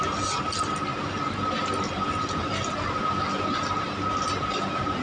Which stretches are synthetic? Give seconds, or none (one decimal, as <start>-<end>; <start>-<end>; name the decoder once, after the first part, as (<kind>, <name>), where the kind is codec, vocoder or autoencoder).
none